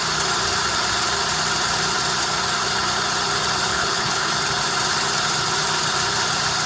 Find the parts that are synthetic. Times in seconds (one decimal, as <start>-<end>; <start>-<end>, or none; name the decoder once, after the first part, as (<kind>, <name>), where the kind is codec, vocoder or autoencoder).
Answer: 3.7-4.3 (codec, HILCodec)